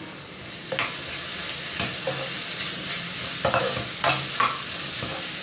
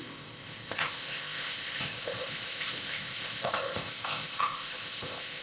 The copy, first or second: second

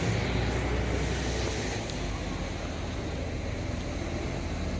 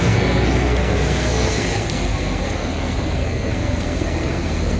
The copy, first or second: second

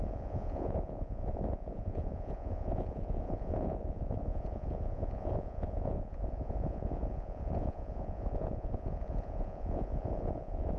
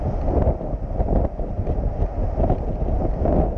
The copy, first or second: first